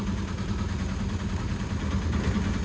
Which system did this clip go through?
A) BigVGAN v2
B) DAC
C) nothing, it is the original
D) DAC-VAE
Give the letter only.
C